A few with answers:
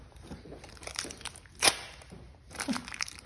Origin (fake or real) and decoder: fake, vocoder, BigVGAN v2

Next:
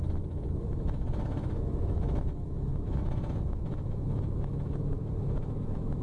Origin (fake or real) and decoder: fake, autoencoder, DAC-VAE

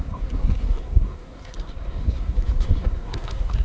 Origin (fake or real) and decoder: fake, codec, SNAC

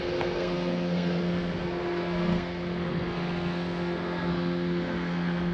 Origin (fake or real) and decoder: fake, codec, SNAC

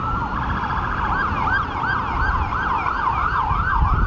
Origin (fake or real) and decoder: real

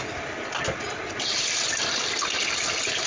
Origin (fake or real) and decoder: real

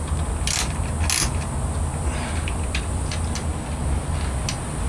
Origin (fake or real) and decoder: real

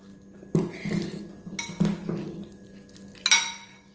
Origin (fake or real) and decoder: real